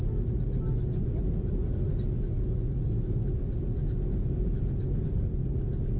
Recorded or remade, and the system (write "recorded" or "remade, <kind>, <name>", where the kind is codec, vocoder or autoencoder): recorded